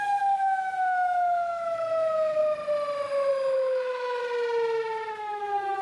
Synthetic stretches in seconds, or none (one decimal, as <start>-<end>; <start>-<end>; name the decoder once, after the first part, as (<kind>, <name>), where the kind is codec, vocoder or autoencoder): 0.0-2.4 (autoencoder, DAC-VAE); 3.3-4.2; 5.1-5.8